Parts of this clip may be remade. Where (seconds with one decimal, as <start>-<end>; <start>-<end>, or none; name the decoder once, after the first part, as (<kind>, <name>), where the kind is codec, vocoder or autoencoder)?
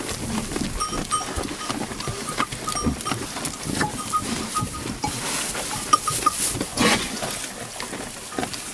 6.7-7.2 (vocoder, Vocos)